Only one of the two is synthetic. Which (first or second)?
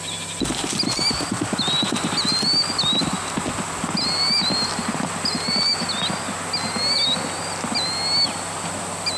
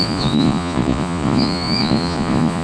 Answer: second